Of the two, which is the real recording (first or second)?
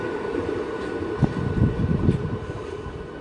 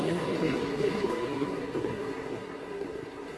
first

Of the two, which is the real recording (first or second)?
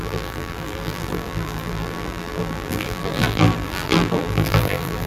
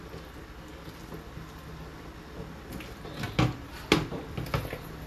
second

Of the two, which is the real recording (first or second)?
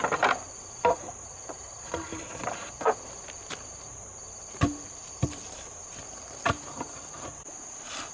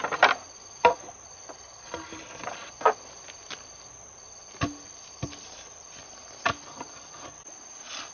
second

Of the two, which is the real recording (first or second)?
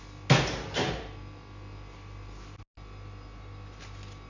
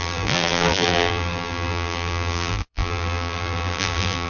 first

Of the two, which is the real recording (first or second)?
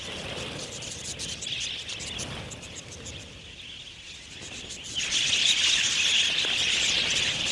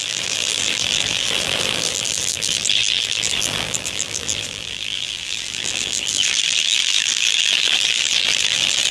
first